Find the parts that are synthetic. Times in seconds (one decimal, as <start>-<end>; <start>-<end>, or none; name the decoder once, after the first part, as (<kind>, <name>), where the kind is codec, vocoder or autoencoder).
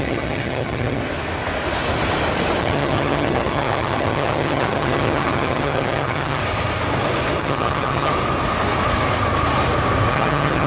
0.0-1.0 (vocoder, HiFi-GAN); 2.6-6.4; 7.4-8.1; 10.1-10.7